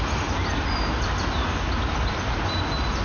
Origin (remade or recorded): recorded